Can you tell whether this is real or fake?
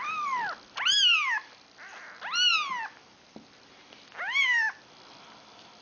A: real